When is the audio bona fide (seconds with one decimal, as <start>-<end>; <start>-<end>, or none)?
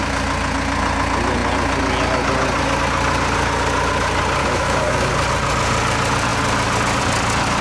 0.0-4.4; 5.1-7.6